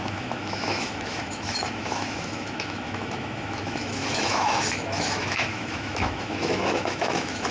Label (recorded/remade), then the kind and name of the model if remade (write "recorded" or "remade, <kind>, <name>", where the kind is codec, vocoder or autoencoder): remade, autoencoder, DAC-VAE